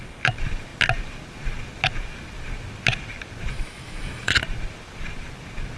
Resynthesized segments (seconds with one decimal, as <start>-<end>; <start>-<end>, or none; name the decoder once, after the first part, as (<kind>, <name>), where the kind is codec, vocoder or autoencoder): 3.5-4.3 (autoencoder, DAC-VAE)